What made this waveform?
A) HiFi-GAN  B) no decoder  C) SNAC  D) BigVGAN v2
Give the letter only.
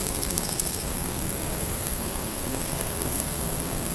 C